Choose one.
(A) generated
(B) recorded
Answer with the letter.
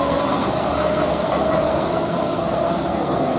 A